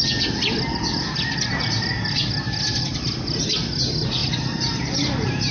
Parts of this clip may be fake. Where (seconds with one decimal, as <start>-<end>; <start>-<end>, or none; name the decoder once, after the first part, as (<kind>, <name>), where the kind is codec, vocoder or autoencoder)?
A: none